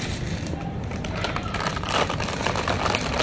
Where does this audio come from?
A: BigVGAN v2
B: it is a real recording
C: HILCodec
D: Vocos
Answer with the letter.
A